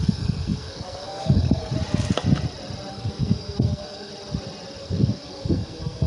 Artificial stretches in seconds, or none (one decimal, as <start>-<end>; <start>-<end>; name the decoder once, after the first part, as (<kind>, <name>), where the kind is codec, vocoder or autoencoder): 0.0-1.7 (codec, SNAC); 2.9-4.1; 4.8-6.1